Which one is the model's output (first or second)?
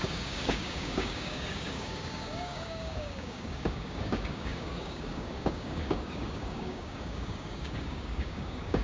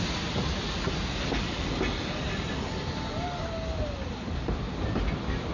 first